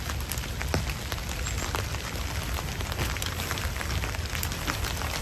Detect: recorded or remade recorded